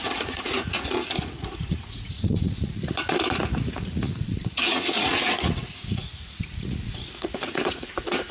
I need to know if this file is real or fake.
fake